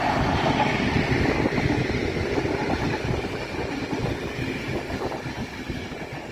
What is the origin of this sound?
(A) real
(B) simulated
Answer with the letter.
A